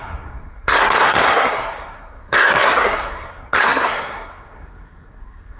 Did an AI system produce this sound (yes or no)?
yes